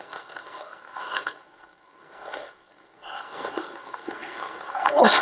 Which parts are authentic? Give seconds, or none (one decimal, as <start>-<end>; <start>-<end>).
none